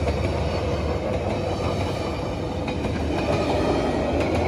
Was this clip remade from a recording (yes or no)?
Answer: no